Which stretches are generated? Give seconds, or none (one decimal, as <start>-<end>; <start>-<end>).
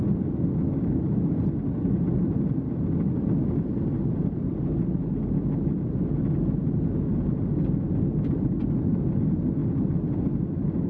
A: none